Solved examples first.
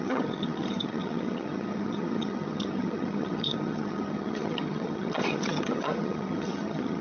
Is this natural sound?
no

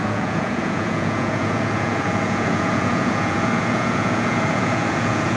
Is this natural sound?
no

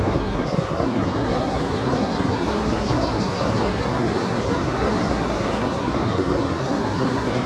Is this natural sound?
no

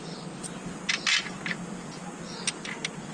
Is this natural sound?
yes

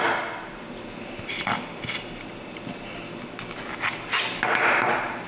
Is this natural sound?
yes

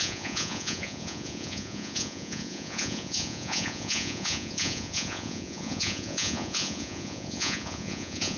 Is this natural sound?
no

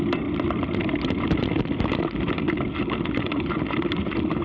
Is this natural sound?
yes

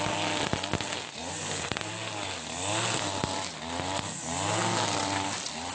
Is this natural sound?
yes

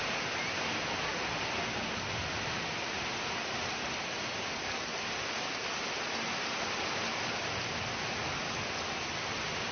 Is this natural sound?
yes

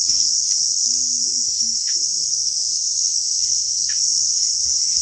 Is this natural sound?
no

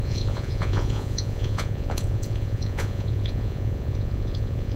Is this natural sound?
no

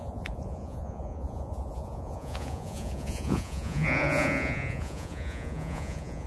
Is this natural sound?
no